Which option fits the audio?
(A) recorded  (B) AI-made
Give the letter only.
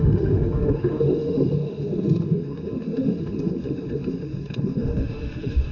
B